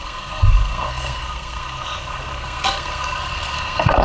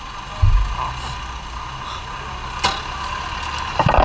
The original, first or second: second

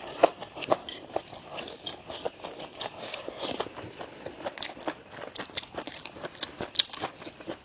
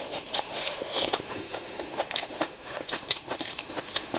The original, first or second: first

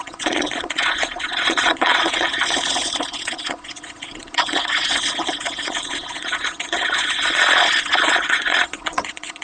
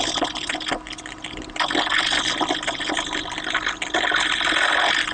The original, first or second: second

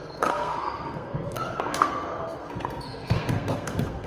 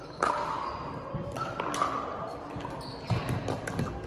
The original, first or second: second